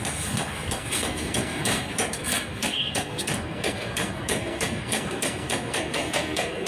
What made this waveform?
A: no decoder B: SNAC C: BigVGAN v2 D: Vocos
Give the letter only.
B